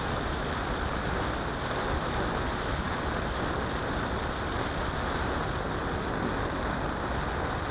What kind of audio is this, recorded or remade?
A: recorded